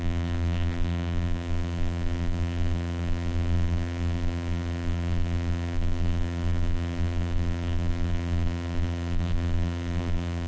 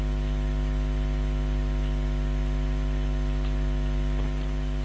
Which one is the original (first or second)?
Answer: second